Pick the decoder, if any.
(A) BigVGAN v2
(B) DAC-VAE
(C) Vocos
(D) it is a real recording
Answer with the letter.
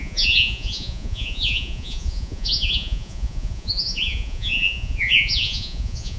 C